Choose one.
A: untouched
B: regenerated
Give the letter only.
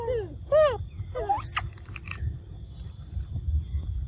A